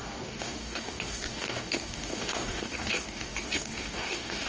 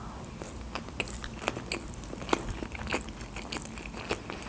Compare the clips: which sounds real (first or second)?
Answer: second